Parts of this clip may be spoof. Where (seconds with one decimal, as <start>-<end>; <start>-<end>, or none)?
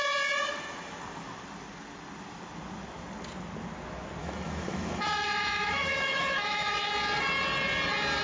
4.2-6.9